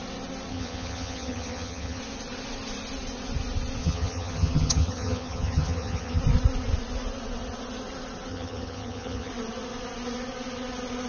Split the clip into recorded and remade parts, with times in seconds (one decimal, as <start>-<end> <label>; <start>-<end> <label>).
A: 0.0-0.5 recorded; 0.5-2.0 remade; 2.0-3.8 recorded; 3.8-6.2 remade; 6.2-8.3 recorded; 8.3-9.3 remade; 9.3-11.1 recorded